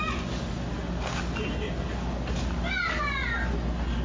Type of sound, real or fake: real